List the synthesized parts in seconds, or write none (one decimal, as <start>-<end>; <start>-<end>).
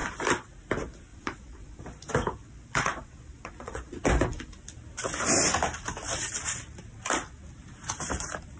1.1-1.8; 2.4-4.0